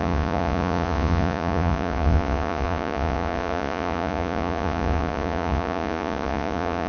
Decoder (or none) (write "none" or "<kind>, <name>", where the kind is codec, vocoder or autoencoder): vocoder, Vocos